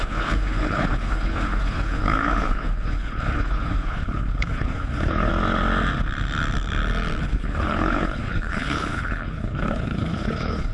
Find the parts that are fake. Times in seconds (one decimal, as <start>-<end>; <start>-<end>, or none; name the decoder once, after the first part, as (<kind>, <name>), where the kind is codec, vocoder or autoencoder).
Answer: 0.0-5.3 (codec, HILCodec); 7.2-10.7